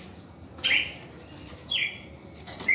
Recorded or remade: recorded